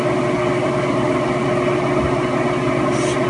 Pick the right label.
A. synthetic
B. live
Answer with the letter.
B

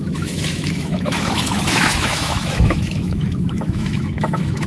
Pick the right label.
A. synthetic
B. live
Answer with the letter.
A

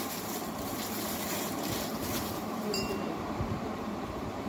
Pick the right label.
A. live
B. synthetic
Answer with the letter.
B